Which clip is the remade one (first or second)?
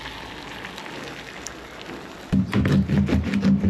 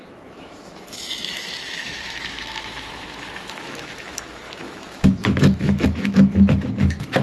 second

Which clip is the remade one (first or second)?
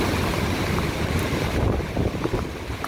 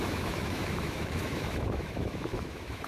second